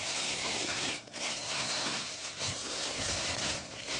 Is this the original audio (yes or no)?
no